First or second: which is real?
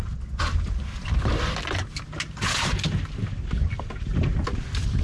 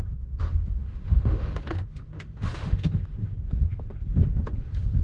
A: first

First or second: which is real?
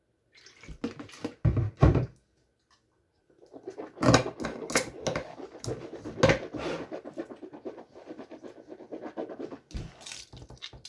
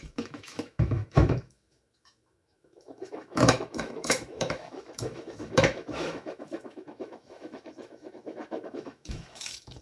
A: first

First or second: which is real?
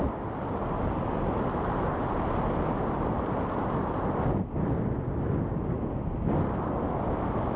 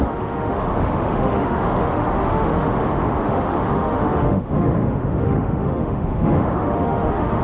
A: first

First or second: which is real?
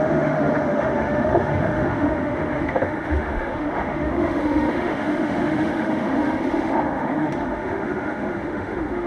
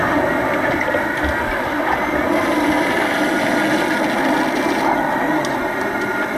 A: second